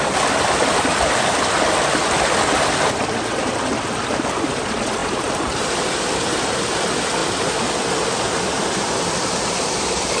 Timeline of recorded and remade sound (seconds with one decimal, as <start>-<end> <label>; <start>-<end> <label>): 0.0-7.2 remade; 7.2-9.1 recorded; 9.1-10.2 remade